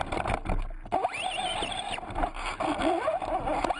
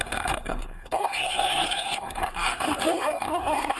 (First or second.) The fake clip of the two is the second